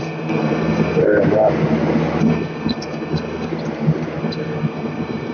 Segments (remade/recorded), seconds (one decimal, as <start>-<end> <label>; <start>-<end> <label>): 0.0-1.0 remade; 1.0-2.2 recorded; 2.2-3.5 remade; 3.5-4.2 recorded; 4.2-5.3 remade

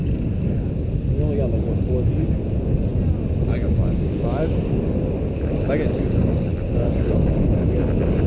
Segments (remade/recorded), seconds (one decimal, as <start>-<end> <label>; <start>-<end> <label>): 0.0-8.3 recorded

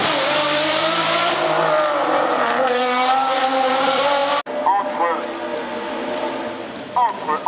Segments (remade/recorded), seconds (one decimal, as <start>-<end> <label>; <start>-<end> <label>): 0.0-4.2 remade; 4.2-5.9 recorded; 5.9-7.5 remade

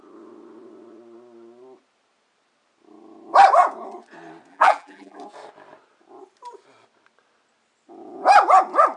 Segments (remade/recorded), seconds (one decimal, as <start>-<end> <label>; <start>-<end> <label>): 0.0-4.5 recorded; 4.5-5.2 remade; 5.2-9.0 recorded

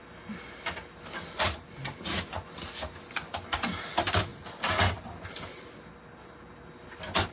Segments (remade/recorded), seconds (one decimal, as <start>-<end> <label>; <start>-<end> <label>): 0.0-7.3 recorded

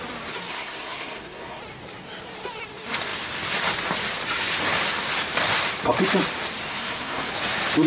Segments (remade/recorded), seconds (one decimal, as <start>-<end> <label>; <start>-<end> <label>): 0.0-0.5 recorded; 0.5-1.6 remade; 1.6-6.7 recorded; 6.7-7.3 remade; 7.3-7.9 recorded